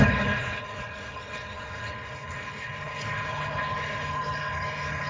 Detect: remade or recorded remade